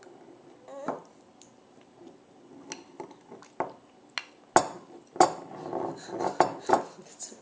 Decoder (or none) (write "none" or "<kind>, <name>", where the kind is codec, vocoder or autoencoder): none